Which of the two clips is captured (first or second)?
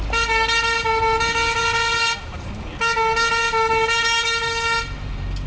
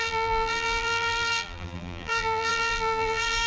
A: first